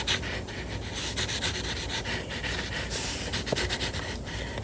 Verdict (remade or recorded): recorded